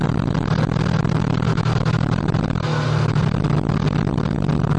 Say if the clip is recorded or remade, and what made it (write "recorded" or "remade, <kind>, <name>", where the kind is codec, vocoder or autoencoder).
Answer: recorded